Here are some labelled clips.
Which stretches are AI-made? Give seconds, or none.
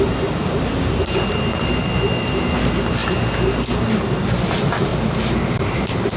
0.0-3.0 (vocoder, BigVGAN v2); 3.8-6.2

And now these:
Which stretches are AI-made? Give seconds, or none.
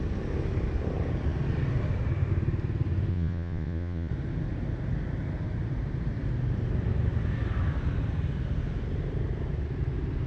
3.1-4.1 (vocoder, Vocos)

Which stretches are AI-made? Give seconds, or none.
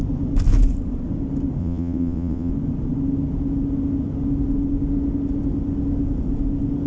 1.6-2.5 (vocoder, WaveNeXt)